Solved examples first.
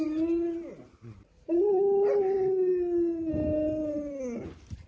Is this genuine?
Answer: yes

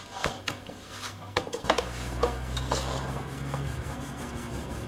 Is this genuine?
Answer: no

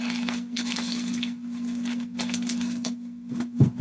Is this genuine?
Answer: no